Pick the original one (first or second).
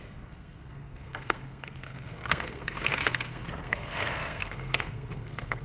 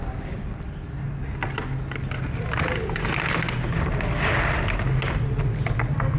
second